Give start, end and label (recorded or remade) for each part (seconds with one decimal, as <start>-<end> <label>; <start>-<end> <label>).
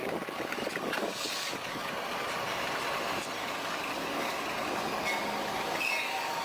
0.0-1.9 remade; 1.9-3.4 recorded; 3.4-6.4 remade